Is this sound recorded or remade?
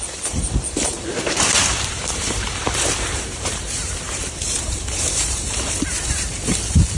remade